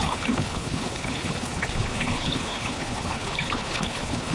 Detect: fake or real fake